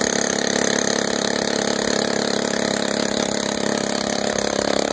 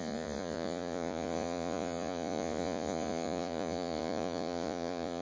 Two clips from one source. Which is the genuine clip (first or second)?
first